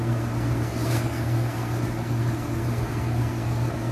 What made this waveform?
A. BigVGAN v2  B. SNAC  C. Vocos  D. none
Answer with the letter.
B